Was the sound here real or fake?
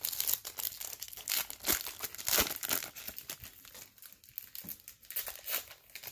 real